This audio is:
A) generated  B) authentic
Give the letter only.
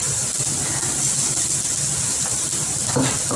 B